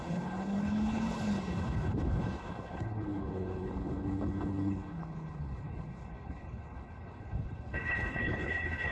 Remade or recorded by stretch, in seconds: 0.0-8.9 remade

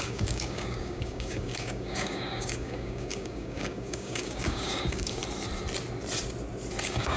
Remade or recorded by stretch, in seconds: 0.0-5.2 remade; 5.2-6.8 recorded; 6.8-7.2 remade

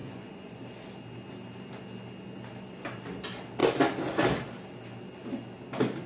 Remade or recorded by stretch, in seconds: 0.0-0.6 remade; 0.6-6.1 recorded

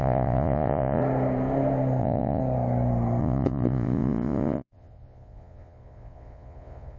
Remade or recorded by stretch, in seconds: 0.0-1.0 remade; 1.0-2.0 recorded; 2.0-2.4 remade; 2.4-3.2 recorded; 3.2-7.0 remade

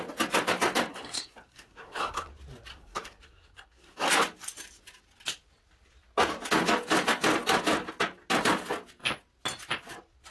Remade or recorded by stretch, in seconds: 0.0-0.9 recorded; 0.9-2.3 remade; 2.3-2.7 recorded; 2.7-4.1 remade; 4.1-10.3 recorded

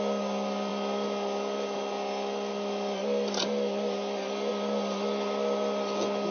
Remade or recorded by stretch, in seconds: 0.0-6.3 recorded

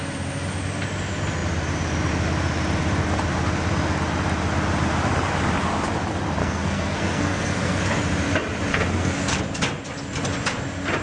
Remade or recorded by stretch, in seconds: 0.0-6.4 recorded; 6.4-7.8 remade; 7.8-8.7 recorded; 8.7-9.4 remade; 9.4-11.0 recorded

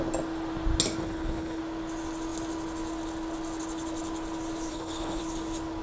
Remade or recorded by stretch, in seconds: 0.0-1.0 recorded; 1.0-1.6 remade; 1.6-4.7 recorded; 4.7-5.2 remade; 5.2-5.8 recorded